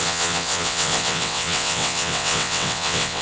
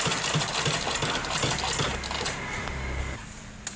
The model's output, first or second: first